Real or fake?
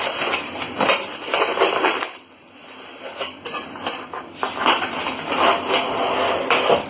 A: real